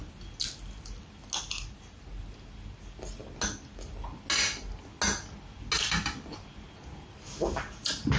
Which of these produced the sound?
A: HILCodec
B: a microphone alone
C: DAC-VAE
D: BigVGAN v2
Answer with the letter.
B